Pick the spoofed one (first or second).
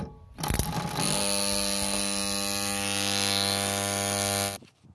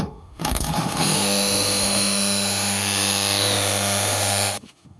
second